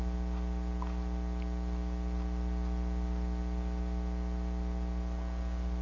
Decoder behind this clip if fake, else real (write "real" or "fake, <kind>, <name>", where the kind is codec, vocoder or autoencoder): real